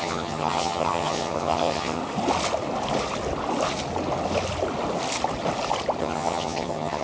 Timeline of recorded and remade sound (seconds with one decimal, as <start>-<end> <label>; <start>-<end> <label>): 0.0-2.0 remade; 2.0-6.0 recorded; 6.0-7.0 remade